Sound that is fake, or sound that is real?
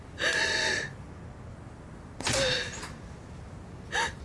real